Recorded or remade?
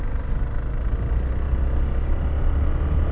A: recorded